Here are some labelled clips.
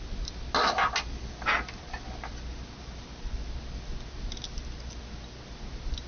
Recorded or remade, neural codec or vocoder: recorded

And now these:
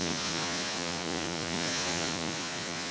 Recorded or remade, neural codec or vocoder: remade, vocoder, Vocos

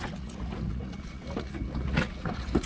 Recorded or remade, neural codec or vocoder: remade, vocoder, Vocos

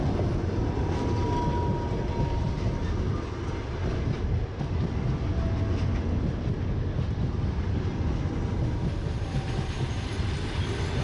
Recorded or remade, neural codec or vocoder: recorded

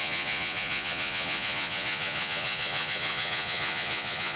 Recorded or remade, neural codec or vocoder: remade, vocoder, Vocos